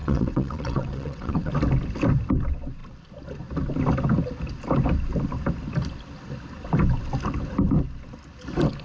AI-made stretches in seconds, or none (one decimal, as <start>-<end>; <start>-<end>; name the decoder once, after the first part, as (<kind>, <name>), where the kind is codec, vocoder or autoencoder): 0.0-1.5 (vocoder, WaveNeXt)